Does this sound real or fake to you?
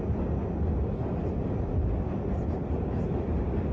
real